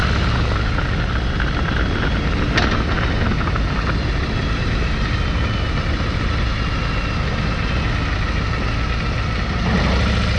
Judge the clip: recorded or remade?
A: recorded